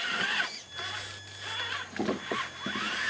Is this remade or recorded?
recorded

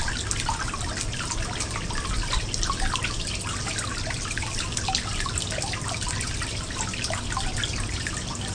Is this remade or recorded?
recorded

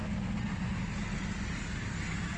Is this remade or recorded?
recorded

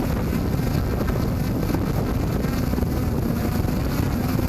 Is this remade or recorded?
recorded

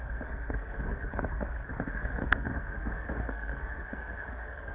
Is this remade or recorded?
remade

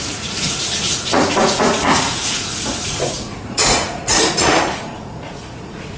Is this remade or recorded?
remade